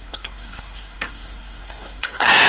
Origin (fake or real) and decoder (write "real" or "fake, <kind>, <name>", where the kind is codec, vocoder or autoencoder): fake, codec, SNAC